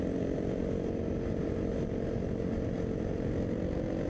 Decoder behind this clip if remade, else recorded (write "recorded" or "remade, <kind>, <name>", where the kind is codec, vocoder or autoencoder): recorded